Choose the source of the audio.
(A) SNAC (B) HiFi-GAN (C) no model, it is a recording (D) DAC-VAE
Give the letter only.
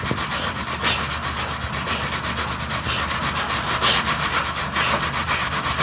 C